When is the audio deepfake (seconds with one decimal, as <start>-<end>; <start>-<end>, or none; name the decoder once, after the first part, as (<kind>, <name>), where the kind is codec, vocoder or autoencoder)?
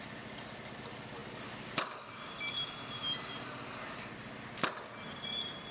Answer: none